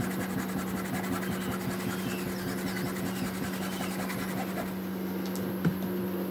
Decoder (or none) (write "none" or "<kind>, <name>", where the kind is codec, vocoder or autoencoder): none